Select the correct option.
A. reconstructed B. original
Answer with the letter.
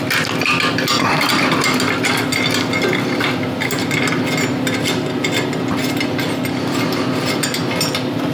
B